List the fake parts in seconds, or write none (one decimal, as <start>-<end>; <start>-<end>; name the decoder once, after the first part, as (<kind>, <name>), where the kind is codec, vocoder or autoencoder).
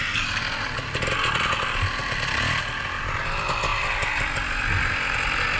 2.0-2.6 (vocoder, BigVGAN v2); 3.7-5.6